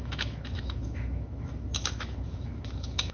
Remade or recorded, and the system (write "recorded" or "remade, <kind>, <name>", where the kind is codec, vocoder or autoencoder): remade, autoencoder, DAC-VAE